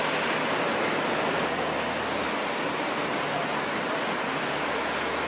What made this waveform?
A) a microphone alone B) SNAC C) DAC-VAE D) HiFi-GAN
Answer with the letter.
A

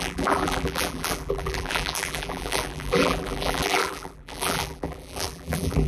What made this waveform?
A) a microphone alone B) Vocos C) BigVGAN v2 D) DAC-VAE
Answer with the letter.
C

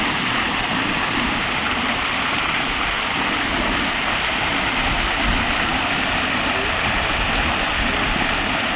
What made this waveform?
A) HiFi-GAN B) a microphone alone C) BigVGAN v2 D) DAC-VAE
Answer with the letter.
B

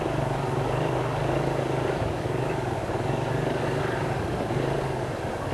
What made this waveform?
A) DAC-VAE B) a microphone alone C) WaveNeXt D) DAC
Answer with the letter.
D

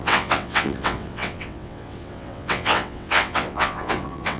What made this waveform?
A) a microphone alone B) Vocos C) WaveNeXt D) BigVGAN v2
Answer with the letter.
C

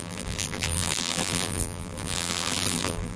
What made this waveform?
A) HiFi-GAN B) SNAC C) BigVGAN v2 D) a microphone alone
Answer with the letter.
C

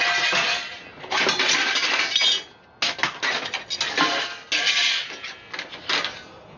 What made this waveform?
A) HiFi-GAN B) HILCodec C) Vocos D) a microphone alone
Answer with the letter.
D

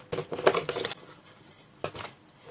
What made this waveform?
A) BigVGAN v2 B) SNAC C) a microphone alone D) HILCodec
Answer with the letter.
C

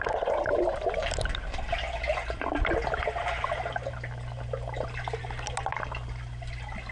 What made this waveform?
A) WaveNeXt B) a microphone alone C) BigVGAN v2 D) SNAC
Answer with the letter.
B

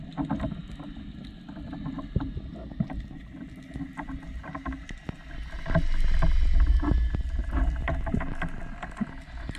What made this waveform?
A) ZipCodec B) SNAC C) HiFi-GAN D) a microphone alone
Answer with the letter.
D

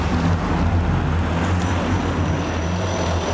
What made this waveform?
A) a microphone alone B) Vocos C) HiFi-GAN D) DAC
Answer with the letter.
A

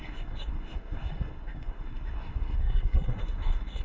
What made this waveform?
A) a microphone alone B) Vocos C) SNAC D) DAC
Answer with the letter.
C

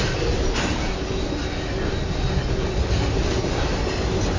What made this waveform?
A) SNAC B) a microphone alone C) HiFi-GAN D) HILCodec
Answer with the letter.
B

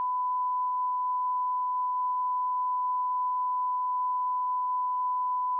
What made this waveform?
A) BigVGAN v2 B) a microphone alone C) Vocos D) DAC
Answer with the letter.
D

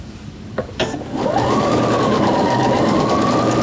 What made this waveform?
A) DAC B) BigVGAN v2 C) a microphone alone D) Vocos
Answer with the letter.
A